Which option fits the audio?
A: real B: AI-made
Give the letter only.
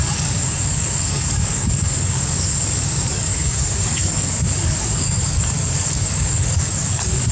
B